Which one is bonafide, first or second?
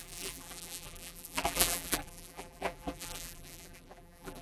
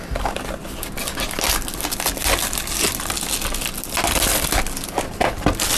second